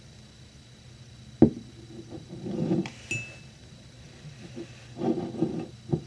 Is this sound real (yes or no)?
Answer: yes